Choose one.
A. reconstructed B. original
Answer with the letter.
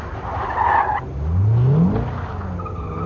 B